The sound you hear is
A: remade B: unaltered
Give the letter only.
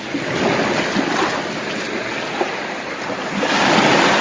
B